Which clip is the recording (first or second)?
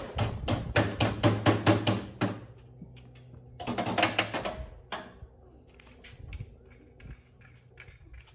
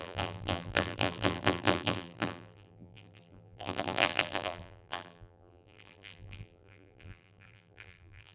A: first